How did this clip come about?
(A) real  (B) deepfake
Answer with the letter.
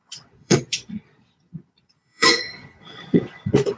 B